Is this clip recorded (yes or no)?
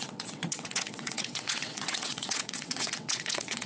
no